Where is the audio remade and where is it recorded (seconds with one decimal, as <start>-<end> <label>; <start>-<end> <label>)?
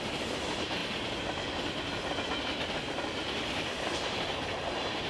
0.0-0.8 remade; 0.8-3.9 recorded; 3.9-5.1 remade